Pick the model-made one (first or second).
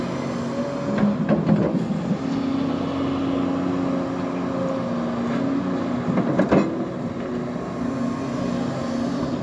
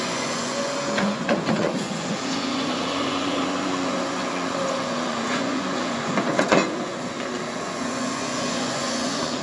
second